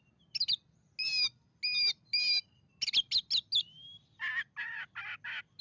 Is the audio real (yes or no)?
yes